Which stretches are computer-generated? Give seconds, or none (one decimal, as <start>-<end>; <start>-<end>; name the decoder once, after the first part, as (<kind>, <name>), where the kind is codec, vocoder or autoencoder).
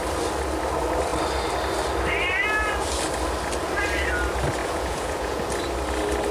4.6-5.4 (vocoder, Vocos)